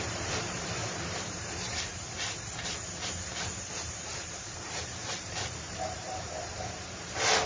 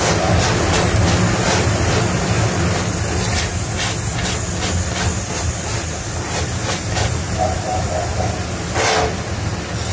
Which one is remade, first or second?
first